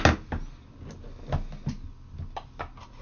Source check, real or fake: real